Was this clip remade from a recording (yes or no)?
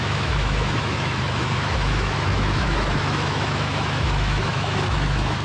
yes